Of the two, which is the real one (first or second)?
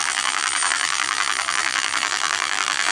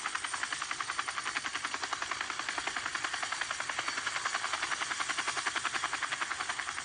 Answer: second